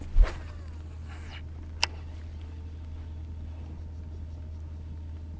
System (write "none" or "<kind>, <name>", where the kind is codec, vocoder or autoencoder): none